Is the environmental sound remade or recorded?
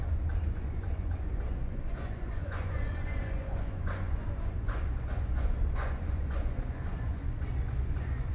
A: remade